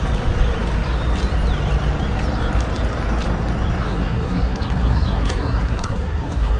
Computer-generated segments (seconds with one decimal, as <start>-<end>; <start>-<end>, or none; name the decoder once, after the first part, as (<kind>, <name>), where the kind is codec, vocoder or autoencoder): 3.8-6.6 (codec, SNAC)